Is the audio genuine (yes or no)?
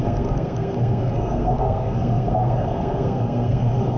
no